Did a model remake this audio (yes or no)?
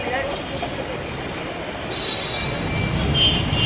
no